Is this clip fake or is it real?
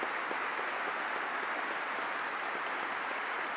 real